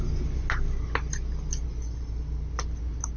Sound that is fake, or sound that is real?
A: real